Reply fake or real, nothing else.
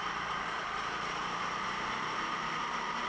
fake